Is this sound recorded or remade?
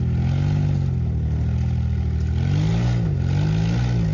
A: recorded